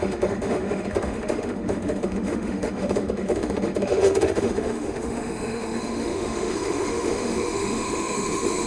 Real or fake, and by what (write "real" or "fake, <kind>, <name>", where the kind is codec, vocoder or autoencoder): fake, autoencoder, DAC-VAE